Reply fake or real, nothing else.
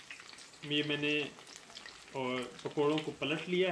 real